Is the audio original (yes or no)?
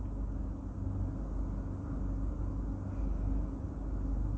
yes